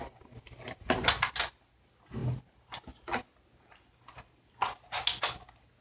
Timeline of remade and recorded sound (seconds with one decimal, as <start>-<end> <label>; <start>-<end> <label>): 0.0-5.8 recorded